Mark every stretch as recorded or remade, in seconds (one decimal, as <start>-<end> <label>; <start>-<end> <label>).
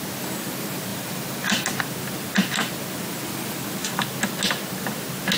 0.0-0.9 recorded; 0.9-1.8 remade; 1.8-5.4 recorded